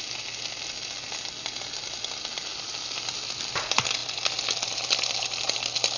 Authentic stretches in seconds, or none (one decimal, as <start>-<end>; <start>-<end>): 0.0-6.0